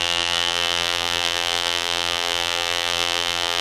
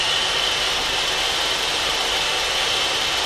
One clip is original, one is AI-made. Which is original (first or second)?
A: second